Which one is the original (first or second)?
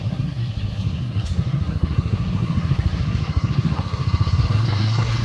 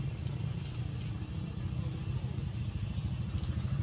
second